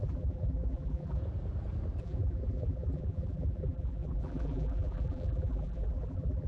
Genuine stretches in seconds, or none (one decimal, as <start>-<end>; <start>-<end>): 1.2-2.0